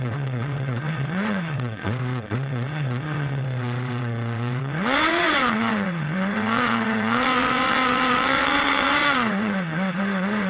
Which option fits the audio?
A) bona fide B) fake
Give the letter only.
B